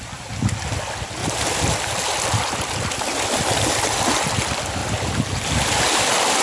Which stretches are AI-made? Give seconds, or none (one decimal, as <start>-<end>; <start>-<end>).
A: 1.2-2.0; 4.8-6.4